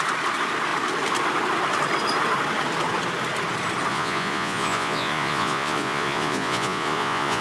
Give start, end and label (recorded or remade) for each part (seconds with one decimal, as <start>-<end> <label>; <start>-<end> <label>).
0.0-3.9 recorded; 3.9-7.4 remade